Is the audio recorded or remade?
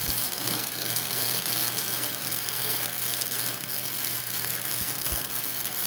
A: remade